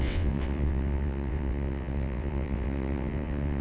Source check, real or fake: fake